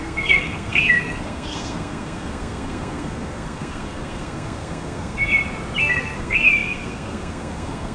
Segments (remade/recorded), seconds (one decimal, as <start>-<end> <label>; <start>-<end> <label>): 0.0-5.3 remade; 5.3-5.8 recorded; 5.8-7.9 remade